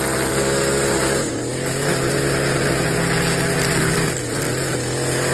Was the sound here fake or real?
real